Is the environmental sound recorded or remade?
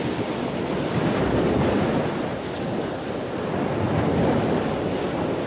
recorded